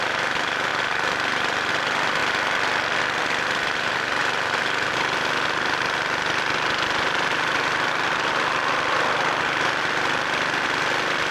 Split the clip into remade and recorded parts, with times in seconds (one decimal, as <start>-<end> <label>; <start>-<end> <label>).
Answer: 0.0-0.7 remade; 0.7-1.7 recorded; 1.7-2.2 remade; 2.2-3.0 recorded; 3.0-11.3 remade